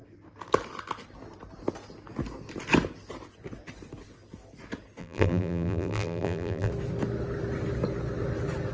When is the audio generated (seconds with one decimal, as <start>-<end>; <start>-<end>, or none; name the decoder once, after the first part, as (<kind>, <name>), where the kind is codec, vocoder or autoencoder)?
5.0-6.7 (vocoder, BigVGAN v2)